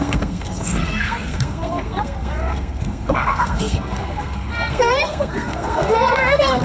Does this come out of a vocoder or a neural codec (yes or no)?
yes